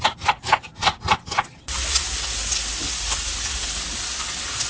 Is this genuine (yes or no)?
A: yes